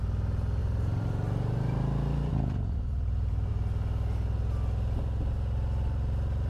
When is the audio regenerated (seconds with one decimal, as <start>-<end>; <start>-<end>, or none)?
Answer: 0.6-3.5